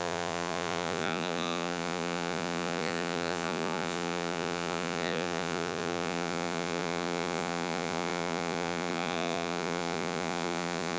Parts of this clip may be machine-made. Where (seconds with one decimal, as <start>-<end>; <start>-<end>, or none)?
0.0-11.0